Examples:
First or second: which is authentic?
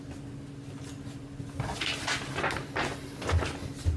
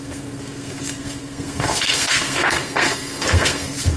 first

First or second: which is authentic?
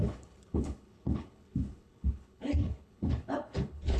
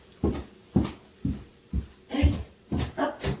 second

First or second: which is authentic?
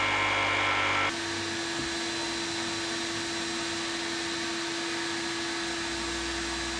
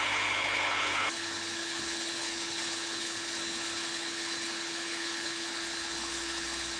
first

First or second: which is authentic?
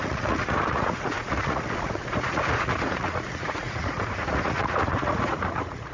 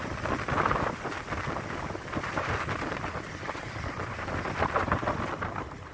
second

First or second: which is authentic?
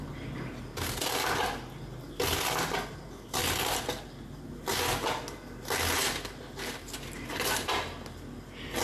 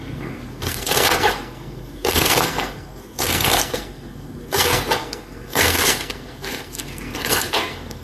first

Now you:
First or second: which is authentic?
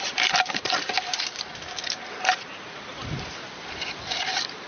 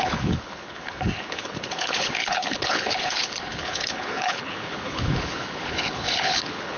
first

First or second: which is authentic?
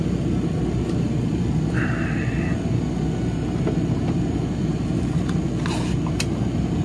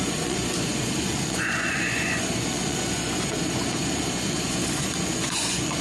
first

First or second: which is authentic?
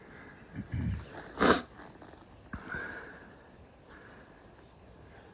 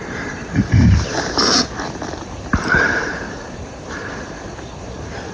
first